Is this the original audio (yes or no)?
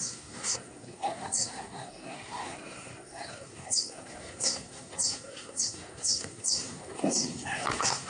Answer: no